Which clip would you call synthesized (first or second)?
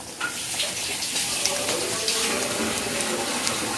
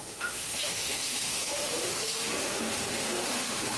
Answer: second